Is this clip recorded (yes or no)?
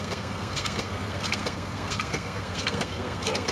no